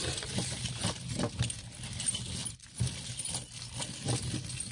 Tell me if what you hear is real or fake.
fake